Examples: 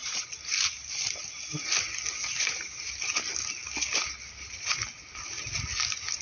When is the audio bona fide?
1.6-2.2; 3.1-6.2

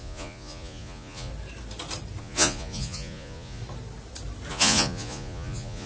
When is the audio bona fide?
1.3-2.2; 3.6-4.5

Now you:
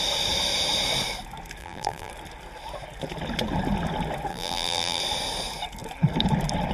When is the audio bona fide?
0.0-1.6; 2.1-4.3; 5.0-6.7

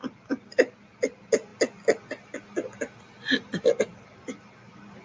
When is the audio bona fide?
0.0-5.0

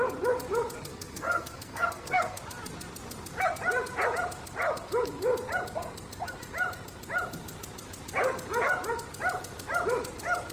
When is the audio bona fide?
0.0-0.9; 2.4-10.5

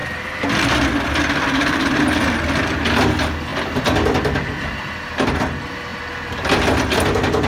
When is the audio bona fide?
0.0-7.5